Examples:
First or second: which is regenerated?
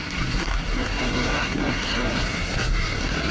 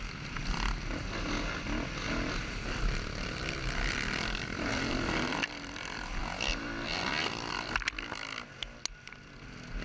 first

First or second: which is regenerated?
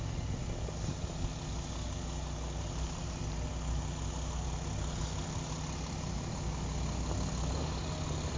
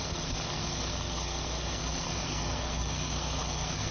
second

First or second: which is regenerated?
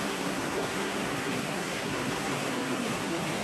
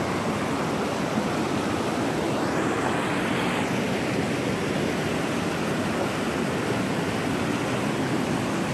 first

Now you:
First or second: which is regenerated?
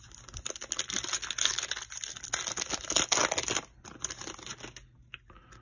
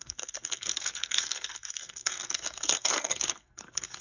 second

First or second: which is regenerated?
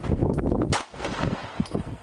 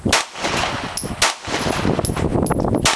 first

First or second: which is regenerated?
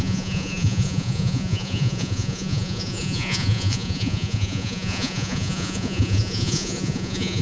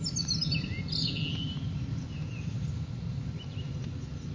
first